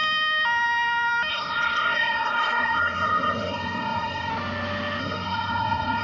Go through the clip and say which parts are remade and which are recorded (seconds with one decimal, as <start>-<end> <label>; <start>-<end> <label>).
0.0-1.3 recorded; 1.3-4.3 remade; 4.3-5.0 recorded; 5.0-6.0 remade